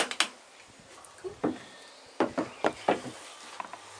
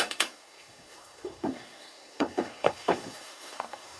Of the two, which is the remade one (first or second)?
second